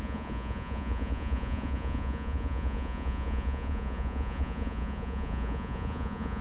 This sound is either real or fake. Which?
fake